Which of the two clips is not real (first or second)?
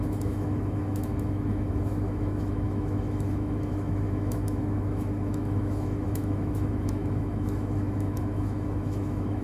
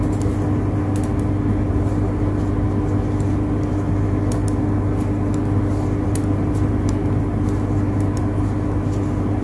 first